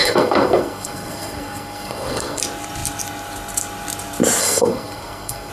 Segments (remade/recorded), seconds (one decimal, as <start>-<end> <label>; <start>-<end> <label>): 0.0-2.4 remade; 2.4-4.4 recorded; 4.4-5.5 remade